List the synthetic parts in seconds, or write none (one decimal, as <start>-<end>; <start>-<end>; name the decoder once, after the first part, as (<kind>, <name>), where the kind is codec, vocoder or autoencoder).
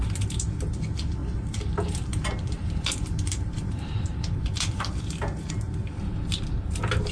1.2-5.5 (vocoder, BigVGAN v2)